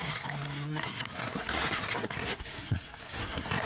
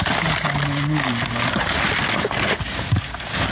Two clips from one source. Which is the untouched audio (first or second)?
second